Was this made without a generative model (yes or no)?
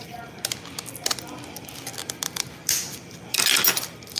yes